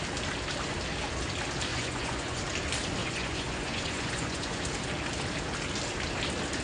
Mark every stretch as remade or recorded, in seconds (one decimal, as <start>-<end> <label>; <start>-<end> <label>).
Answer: 0.0-1.7 recorded; 1.7-2.4 remade; 2.4-3.0 recorded; 3.0-4.6 remade; 4.6-6.6 recorded